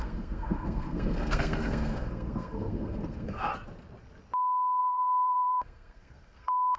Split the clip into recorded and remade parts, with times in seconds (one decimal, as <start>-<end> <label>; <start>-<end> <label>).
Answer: 0.0-3.5 remade; 3.5-4.8 recorded; 4.8-6.8 remade